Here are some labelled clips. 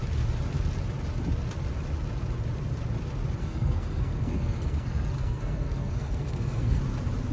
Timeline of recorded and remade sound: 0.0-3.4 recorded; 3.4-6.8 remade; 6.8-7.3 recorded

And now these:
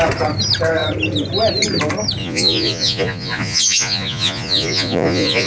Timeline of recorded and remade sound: 0.0-2.2 recorded; 2.2-5.5 remade

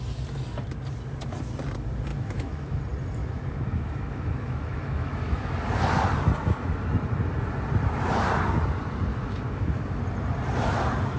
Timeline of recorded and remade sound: 0.0-2.1 recorded; 2.1-2.8 remade; 2.8-3.2 recorded; 3.2-5.5 remade; 5.5-9.1 recorded; 9.1-10.0 remade; 10.0-11.2 recorded

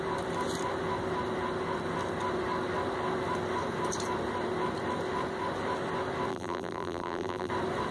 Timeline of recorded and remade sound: 0.0-6.3 recorded; 6.3-7.5 remade; 7.5-7.9 recorded

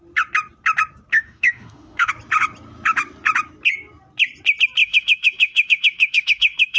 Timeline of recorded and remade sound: 0.0-1.1 recorded; 1.1-2.1 remade; 2.1-4.8 recorded; 4.8-6.8 remade

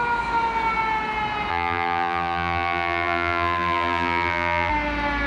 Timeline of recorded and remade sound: 0.0-1.5 recorded; 1.5-4.7 remade; 4.7-5.3 recorded